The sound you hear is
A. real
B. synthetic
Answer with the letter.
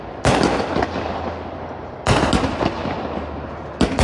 A